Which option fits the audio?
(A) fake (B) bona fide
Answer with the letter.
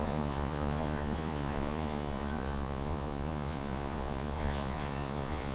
A